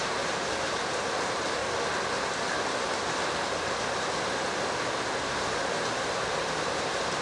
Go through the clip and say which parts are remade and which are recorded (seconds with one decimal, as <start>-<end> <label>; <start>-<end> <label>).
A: 0.0-1.6 remade; 1.6-5.6 recorded; 5.6-7.2 remade